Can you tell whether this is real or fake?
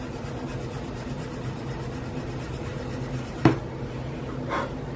real